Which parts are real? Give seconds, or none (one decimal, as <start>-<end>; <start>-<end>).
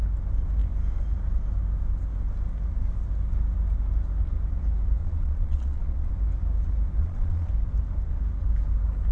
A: 0.0-5.0; 6.1-7.0; 7.5-9.1